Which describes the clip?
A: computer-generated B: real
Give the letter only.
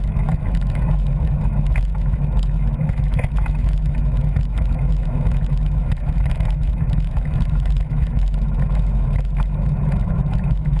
A